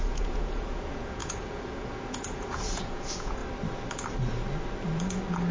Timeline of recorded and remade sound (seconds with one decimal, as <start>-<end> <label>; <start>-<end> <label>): 0.0-3.4 remade; 3.4-5.5 recorded